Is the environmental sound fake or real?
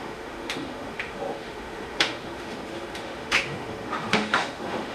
fake